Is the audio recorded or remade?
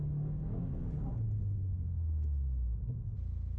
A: recorded